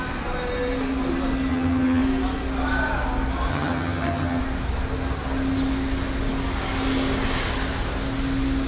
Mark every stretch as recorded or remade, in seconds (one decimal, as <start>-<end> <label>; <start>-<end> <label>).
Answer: 0.0-1.5 recorded; 1.5-2.0 remade; 2.0-3.5 recorded; 3.5-4.4 remade; 4.4-8.7 recorded